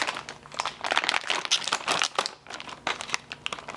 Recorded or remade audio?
recorded